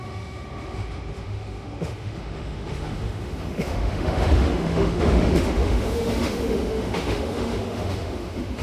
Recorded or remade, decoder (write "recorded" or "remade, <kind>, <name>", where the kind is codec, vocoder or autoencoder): remade, autoencoder, DAC-VAE